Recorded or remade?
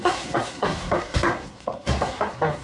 remade